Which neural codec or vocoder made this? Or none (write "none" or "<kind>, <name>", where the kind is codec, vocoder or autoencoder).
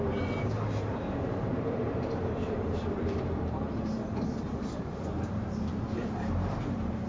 vocoder, BigVGAN v2